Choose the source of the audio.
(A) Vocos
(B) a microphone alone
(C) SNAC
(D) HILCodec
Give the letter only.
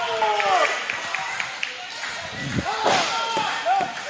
B